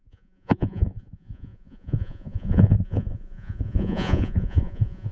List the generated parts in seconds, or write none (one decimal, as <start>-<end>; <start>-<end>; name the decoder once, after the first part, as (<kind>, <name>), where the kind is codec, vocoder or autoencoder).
0.0-5.1 (vocoder, Vocos)